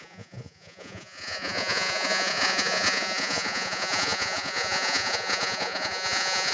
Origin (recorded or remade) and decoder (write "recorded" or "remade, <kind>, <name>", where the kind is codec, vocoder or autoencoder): remade, vocoder, Vocos